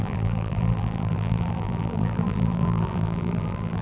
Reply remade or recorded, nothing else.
remade